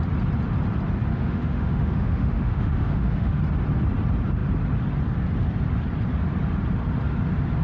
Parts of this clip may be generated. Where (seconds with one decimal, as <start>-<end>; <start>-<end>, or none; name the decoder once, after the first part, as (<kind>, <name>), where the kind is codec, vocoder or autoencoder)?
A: 1.1-3.4 (autoencoder, DAC-VAE)